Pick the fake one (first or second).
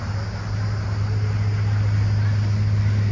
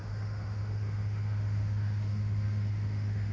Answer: second